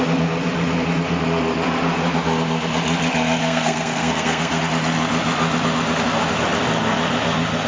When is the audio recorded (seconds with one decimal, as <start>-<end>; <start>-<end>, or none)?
0.0-3.4; 4.6-7.7